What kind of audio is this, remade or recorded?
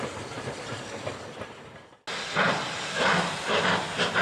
recorded